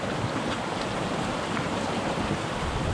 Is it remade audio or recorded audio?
recorded